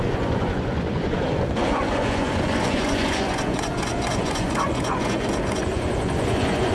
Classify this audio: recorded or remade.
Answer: remade